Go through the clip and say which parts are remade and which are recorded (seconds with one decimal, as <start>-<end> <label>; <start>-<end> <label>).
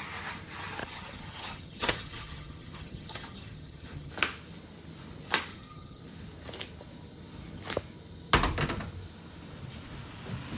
0.0-0.8 recorded; 0.8-4.1 remade; 4.1-5.5 recorded; 5.5-6.0 remade; 6.0-10.6 recorded